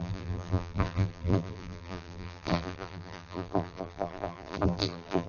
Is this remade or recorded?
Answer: remade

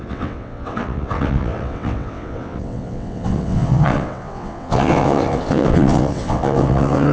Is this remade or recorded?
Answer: remade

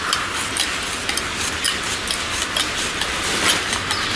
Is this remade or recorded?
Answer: recorded